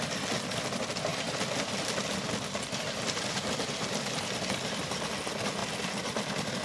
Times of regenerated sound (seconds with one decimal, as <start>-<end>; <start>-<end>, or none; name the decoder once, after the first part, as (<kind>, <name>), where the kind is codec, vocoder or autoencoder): none